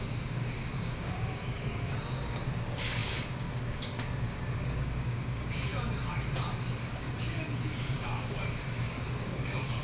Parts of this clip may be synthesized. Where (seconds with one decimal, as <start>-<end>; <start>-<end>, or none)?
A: 0.0-5.7; 6.9-9.8